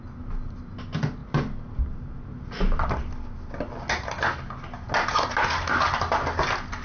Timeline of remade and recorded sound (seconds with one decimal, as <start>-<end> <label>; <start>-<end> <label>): 0.0-6.8 recorded